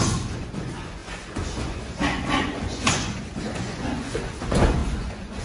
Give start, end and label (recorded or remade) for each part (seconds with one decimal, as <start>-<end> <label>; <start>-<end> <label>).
0.0-5.4 remade